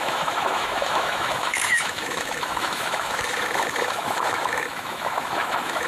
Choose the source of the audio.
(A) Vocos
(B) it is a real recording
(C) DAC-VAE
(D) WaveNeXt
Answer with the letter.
C